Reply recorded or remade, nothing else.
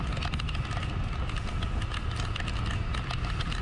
recorded